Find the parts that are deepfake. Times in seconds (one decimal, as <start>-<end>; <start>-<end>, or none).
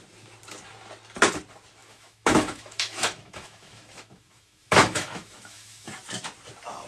1.8-5.9